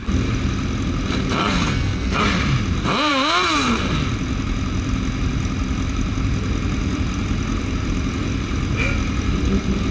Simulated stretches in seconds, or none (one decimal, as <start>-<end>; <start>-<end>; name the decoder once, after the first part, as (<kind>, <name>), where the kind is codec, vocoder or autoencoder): 1.4-2.2 (codec, SNAC)